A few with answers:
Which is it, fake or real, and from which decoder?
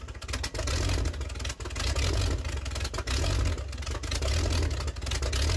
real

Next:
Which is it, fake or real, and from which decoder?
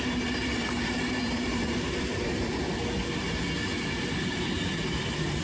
real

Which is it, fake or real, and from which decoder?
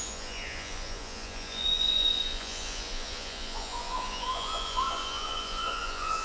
fake, vocoder, Vocos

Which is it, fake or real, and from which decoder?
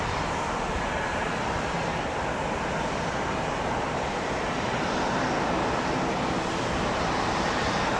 real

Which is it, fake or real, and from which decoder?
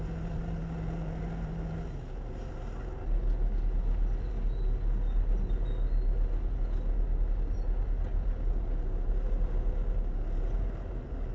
real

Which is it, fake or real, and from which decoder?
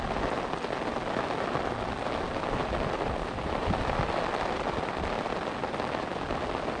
real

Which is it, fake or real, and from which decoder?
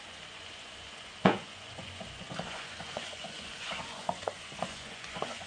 fake, vocoder, Vocos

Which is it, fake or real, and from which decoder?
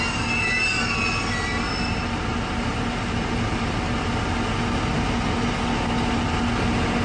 real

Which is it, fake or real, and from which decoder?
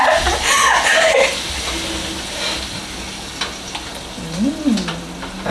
real